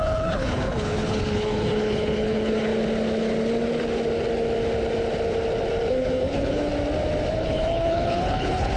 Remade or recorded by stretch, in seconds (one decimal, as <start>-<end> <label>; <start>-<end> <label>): 0.0-2.7 remade; 2.7-5.9 recorded; 5.9-6.7 remade; 6.7-7.3 recorded; 7.3-8.8 remade